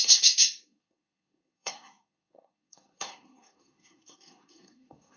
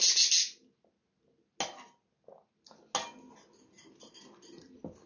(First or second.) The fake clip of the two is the first